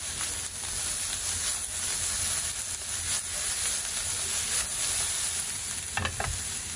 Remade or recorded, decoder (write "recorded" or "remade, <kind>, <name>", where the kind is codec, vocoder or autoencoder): recorded